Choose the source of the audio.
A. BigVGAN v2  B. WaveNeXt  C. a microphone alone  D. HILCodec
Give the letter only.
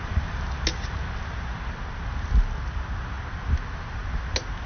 C